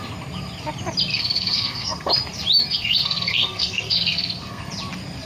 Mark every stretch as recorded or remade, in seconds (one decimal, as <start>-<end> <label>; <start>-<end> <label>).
0.0-1.1 recorded; 1.1-2.1 remade; 2.1-2.6 recorded; 2.6-4.7 remade; 4.7-5.3 recorded